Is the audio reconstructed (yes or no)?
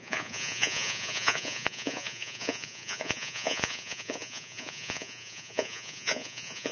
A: yes